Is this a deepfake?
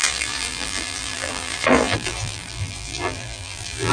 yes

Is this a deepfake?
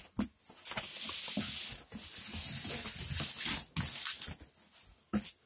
no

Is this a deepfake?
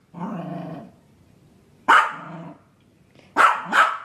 yes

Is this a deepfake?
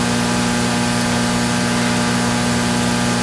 no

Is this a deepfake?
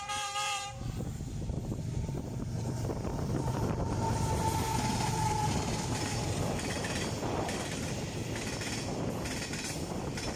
yes